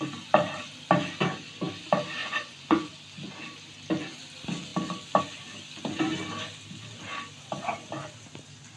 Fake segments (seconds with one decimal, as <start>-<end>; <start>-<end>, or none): 2.2-2.9